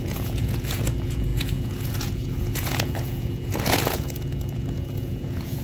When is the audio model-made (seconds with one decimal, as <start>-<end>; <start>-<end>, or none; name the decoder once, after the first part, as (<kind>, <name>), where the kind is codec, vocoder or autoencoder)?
0.0-5.6 (vocoder, Vocos)